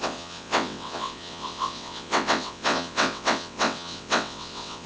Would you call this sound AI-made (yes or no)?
yes